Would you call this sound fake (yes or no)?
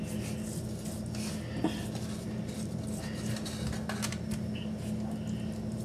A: no